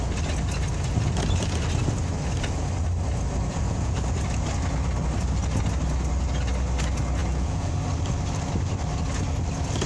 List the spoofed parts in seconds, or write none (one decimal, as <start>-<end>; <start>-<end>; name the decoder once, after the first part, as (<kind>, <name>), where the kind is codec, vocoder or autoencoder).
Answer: 3.5-4.0 (vocoder, Vocos); 7.2-7.7